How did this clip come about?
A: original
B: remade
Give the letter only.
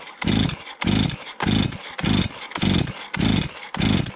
A